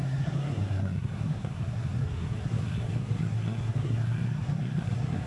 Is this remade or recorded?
remade